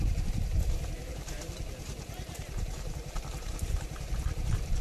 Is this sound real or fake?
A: fake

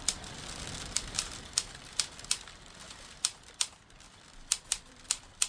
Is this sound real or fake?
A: fake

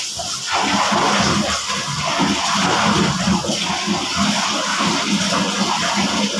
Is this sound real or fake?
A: real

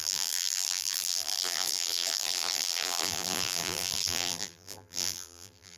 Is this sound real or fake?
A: fake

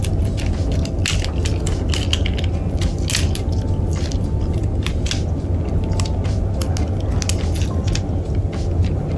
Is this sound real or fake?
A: real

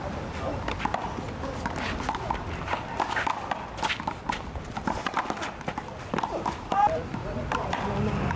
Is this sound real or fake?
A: fake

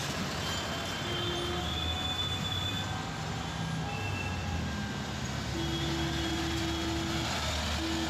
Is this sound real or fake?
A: real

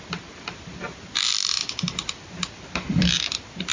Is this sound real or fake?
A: real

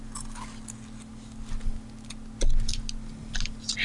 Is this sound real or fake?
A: real